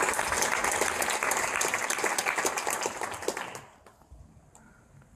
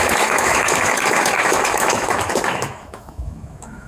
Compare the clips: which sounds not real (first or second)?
second